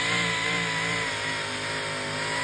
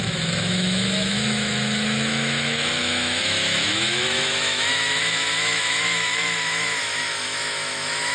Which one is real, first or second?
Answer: first